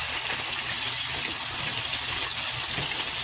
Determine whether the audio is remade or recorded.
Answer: recorded